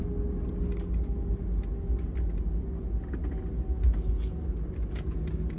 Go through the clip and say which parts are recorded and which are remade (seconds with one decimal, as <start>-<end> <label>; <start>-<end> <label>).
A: 0.0-5.6 recorded